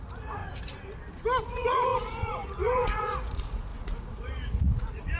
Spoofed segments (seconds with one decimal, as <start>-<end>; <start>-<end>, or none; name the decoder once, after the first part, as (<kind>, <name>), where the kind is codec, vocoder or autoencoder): 0.0-0.4 (vocoder, Vocos); 1.4-5.2